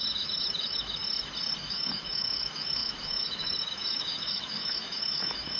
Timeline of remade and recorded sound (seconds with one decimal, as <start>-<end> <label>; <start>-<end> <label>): 0.0-1.0 remade; 1.0-1.6 recorded; 1.6-5.6 remade